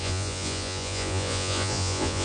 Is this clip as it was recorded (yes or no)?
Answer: no